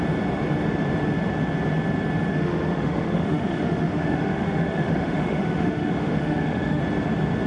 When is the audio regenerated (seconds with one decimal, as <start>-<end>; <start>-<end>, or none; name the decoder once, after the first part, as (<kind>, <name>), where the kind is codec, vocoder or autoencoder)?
2.3-6.8 (autoencoder, DAC-VAE)